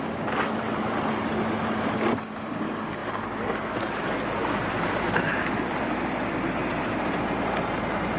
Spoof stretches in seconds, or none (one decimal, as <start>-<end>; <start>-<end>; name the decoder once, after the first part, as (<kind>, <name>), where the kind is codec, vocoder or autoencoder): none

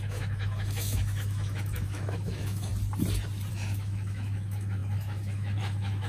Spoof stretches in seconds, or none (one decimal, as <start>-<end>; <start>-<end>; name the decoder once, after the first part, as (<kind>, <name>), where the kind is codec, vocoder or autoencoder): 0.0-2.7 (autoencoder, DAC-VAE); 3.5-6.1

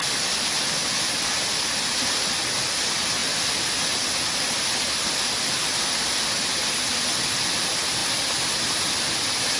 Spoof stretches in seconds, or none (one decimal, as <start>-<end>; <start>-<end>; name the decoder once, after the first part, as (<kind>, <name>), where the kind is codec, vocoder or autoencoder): none